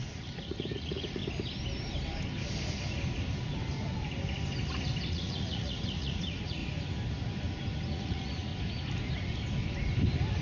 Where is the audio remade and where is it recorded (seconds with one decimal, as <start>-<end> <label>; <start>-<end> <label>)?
0.0-1.2 remade; 1.2-5.1 recorded; 5.1-6.6 remade; 6.6-7.9 recorded; 7.9-8.5 remade; 8.5-10.4 recorded